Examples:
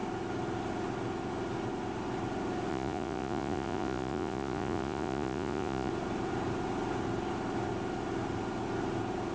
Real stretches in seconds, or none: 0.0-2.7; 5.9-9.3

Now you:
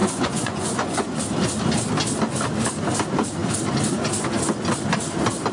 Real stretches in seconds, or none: 1.2-5.5

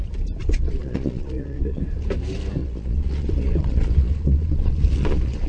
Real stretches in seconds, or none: 0.0-0.4; 1.8-2.6

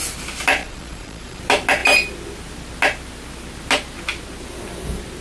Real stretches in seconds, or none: 0.0-0.6; 1.4-5.2